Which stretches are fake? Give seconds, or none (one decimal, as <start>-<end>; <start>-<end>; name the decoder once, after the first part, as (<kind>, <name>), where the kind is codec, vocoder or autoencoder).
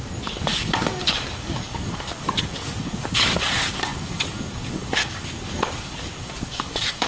0.0-7.1 (codec, DAC)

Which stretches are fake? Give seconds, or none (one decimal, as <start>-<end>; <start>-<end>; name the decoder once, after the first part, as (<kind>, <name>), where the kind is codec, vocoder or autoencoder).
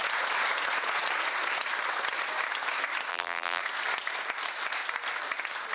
3.1-3.6 (vocoder, BigVGAN v2)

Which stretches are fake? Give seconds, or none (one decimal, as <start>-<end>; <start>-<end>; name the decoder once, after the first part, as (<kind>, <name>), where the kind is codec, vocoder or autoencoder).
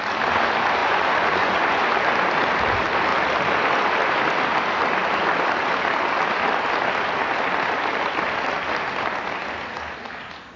0.8-1.8 (vocoder, Vocos)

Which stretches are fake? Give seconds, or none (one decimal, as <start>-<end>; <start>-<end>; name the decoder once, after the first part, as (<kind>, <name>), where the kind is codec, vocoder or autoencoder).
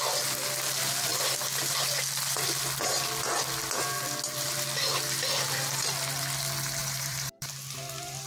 6.8-7.5 (vocoder, BigVGAN v2)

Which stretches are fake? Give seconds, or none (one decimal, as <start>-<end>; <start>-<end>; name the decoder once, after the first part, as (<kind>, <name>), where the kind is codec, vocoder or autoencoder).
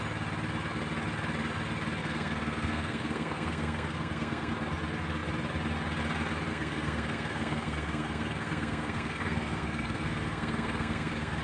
2.0-4.5 (codec, SNAC); 6.5-11.4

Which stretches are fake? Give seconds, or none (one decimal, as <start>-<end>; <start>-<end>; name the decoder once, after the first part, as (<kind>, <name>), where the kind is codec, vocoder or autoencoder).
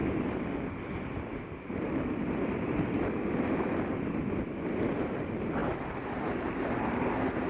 none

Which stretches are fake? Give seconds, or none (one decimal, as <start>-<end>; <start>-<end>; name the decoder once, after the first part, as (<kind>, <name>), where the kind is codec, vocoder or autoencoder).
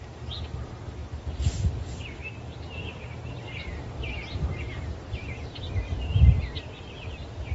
0.0-1.0 (vocoder, BigVGAN v2); 1.8-2.2; 3.0-7.5